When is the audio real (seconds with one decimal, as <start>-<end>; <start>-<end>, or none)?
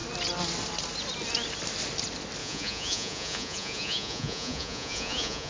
0.0-2.4